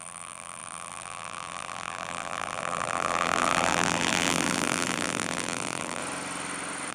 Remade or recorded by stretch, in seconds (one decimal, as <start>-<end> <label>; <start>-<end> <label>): 0.0-6.0 remade; 6.0-6.9 recorded